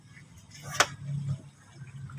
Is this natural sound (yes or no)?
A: yes